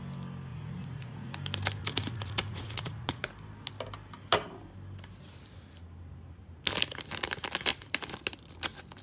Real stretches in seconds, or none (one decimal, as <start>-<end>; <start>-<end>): 0.0-0.5; 1.3-1.8; 3.3-9.0